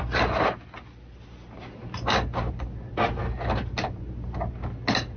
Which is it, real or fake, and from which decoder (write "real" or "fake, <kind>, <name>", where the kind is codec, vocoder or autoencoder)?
real